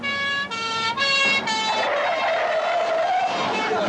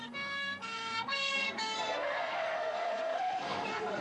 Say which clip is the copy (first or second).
second